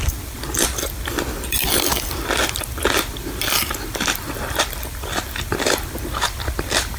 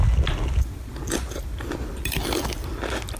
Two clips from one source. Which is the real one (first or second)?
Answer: second